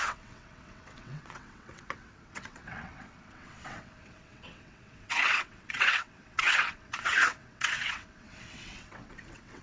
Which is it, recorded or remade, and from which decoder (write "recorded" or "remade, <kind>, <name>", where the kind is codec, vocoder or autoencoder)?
remade, vocoder, WaveNeXt